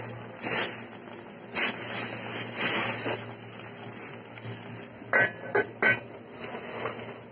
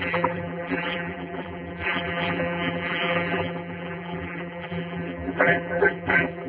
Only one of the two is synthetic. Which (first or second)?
second